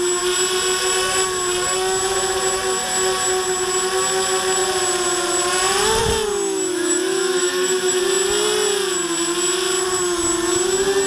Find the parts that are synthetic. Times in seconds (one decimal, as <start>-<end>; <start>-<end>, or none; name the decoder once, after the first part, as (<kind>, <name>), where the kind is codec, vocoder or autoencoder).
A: 6.7-8.0 (autoencoder, DAC-VAE)